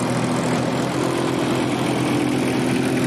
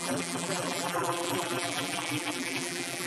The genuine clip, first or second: first